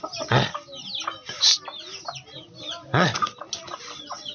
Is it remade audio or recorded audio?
recorded